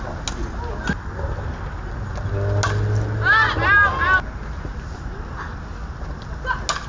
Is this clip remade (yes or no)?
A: no